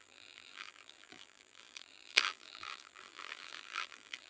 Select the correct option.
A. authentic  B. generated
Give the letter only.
B